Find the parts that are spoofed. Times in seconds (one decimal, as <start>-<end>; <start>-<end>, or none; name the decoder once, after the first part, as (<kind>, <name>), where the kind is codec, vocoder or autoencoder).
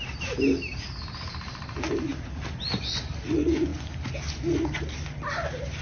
none